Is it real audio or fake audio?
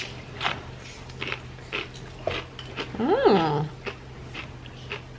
real